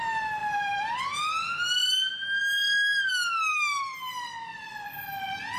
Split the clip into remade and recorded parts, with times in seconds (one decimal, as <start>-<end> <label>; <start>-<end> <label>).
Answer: 0.0-0.4 recorded; 0.4-1.0 remade; 1.0-3.5 recorded; 3.5-5.6 remade